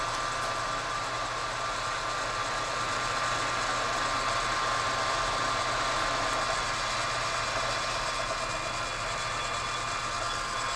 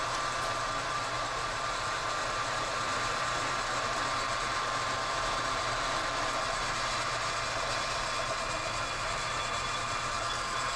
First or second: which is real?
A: first